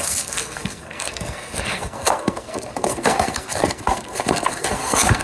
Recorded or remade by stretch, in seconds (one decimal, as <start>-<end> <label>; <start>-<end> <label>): 0.0-5.2 remade